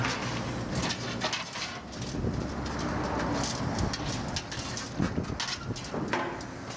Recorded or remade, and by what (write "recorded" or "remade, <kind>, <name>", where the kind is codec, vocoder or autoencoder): recorded